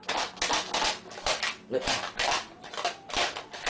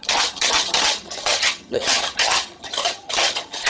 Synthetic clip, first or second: second